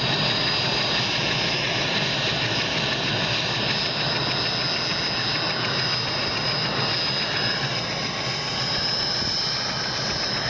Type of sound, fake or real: real